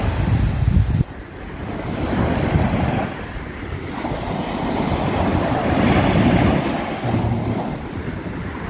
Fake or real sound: real